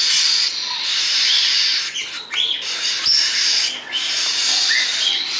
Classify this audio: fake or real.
real